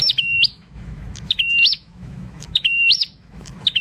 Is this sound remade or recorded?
remade